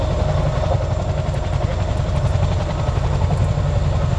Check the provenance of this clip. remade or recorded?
recorded